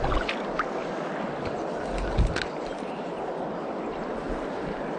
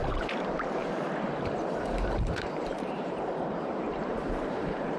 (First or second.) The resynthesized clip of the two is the second